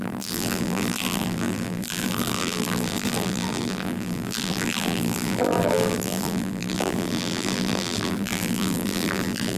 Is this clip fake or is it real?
fake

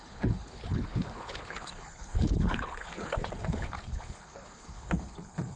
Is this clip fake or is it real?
fake